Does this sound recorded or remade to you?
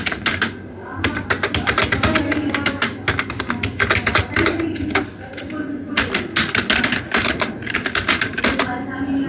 recorded